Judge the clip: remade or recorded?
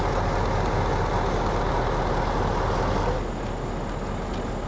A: recorded